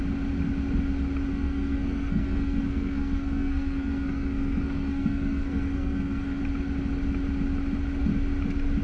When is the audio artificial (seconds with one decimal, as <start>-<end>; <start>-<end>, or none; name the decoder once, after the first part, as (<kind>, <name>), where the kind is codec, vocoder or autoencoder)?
1.3-6.4 (codec, SNAC)